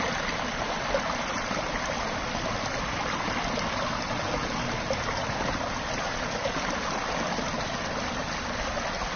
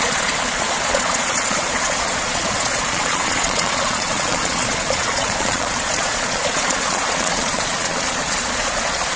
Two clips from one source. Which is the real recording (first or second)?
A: first